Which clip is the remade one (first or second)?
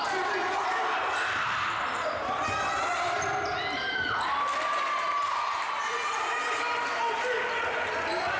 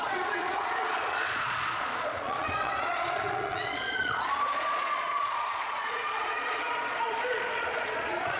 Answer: second